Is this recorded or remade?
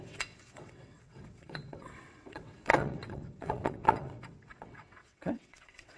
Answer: remade